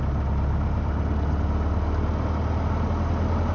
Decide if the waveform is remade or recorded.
recorded